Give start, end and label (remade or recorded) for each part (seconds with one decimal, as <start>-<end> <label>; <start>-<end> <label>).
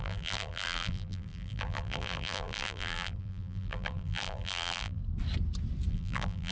0.0-5.0 remade; 5.0-5.9 recorded; 5.9-6.5 remade